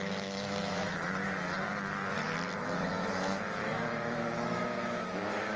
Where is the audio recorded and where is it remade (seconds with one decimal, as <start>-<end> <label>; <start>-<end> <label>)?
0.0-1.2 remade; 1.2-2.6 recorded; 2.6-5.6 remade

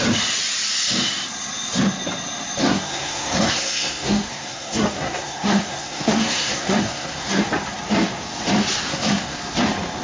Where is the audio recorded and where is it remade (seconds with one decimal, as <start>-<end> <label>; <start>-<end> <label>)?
0.0-2.6 recorded; 2.6-7.4 remade; 7.4-8.9 recorded; 8.9-9.4 remade; 9.4-10.0 recorded

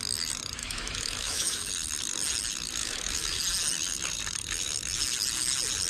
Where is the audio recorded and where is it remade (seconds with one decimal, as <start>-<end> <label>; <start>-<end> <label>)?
0.0-0.6 recorded; 0.6-1.7 remade; 1.7-2.8 recorded; 2.8-3.4 remade; 3.4-5.9 recorded

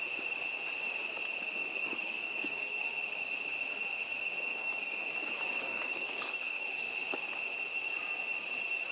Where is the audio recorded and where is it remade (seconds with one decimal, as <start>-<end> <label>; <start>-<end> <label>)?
0.0-1.6 recorded; 1.6-2.9 remade; 2.9-4.5 recorded; 4.5-6.9 remade; 6.9-8.9 recorded

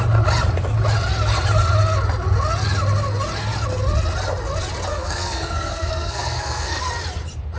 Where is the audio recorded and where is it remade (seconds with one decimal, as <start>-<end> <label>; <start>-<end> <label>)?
0.0-4.9 recorded; 4.9-6.8 remade; 6.8-7.6 recorded